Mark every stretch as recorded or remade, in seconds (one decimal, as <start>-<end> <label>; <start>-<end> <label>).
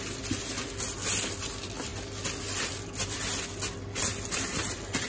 0.0-5.1 recorded